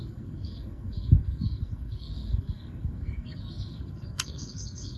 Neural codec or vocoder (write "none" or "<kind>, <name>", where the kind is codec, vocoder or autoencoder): codec, SNAC